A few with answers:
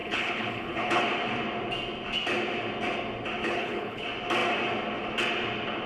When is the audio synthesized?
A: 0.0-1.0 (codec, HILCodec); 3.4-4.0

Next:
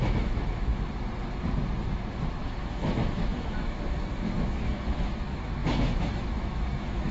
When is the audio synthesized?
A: 0.0-0.7 (autoencoder, DAC-VAE); 2.4-7.1

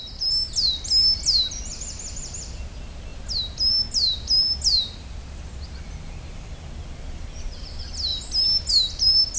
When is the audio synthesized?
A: none

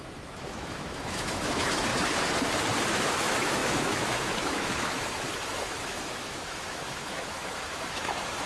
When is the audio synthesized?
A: 0.0-1.9 (autoencoder, DAC-VAE); 3.1-8.5

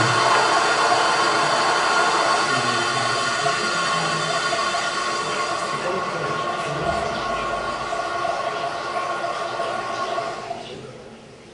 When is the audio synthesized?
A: none

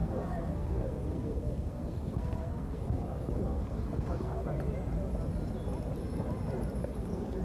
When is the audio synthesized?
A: 0.0-4.4 (codec, SNAC); 6.8-7.4

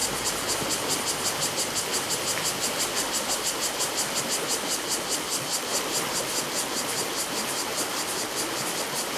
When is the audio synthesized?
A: 0.0-4.2 (vocoder, BigVGAN v2)